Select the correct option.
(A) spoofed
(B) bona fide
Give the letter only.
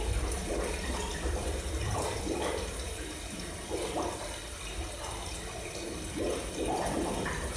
A